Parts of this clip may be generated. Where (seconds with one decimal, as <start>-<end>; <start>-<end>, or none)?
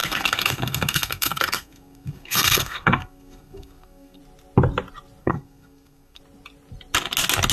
0.0-4.2; 5.2-6.2